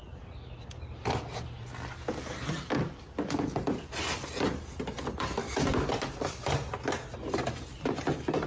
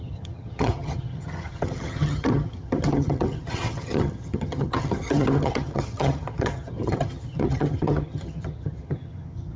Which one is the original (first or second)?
first